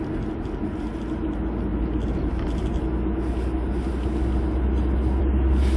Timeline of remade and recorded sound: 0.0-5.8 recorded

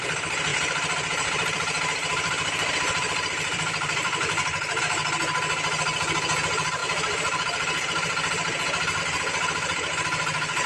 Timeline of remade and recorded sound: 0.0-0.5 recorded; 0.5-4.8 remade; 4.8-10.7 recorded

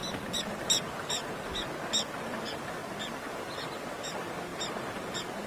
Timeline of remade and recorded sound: 0.0-1.2 remade; 1.2-2.2 recorded; 2.2-2.8 remade; 2.8-3.9 recorded; 3.9-5.5 remade

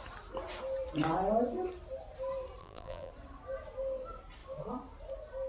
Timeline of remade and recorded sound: 0.0-2.6 recorded; 2.6-3.1 remade; 3.1-5.5 recorded

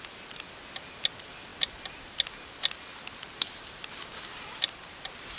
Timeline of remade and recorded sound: 0.0-5.4 recorded